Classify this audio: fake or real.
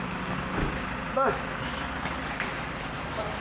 real